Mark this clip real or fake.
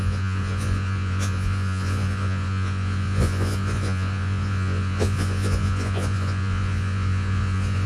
fake